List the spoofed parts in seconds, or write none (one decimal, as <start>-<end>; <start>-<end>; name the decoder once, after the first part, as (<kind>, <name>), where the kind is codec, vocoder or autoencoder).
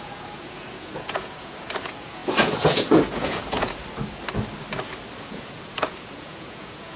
0.0-3.8 (vocoder, Vocos); 5.2-7.0